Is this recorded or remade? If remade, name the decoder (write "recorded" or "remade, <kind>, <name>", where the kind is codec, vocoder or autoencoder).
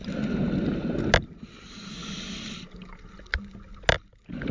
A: recorded